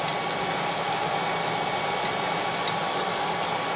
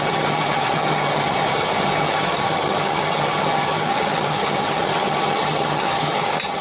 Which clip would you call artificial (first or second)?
second